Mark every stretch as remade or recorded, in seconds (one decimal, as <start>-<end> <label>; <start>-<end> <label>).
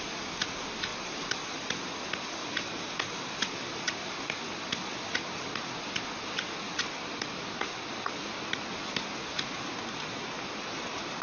0.0-11.2 recorded